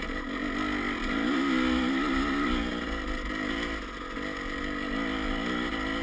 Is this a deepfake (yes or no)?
no